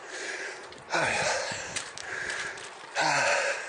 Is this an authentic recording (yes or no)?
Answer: yes